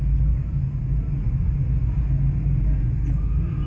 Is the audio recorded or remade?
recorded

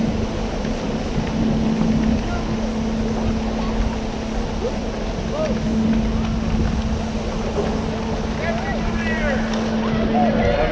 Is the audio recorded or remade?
recorded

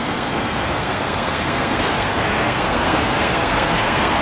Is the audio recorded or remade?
remade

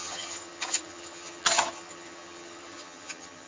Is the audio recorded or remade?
remade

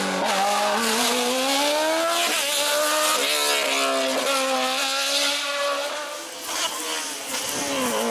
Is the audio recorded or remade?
recorded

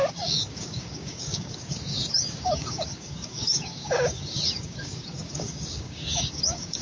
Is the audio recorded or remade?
remade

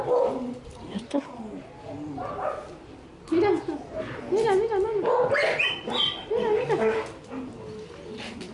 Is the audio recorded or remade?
recorded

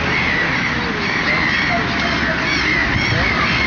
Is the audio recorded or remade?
recorded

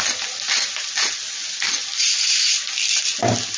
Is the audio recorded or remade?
recorded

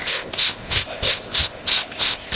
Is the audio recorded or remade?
remade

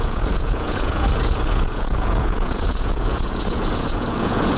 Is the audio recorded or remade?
remade